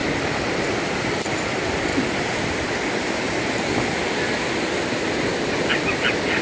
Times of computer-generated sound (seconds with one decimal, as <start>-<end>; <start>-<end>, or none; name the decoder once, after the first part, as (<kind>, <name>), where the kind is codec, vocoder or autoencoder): none